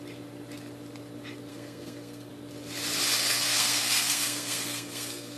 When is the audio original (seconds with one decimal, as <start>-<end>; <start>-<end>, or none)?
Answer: 0.0-1.5; 2.3-3.2